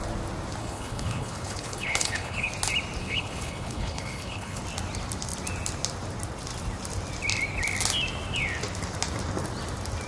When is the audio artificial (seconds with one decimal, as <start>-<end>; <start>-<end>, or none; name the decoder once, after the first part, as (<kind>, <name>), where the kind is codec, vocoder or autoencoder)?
0.6-2.5 (codec, HILCodec); 3.0-4.6